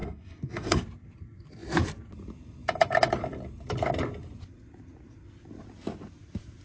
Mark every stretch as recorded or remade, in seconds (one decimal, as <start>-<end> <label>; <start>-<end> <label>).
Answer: 0.0-0.8 remade; 0.8-6.6 recorded